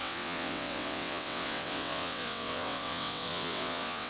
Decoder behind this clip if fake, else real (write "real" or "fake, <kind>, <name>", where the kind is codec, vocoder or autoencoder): fake, vocoder, WaveNeXt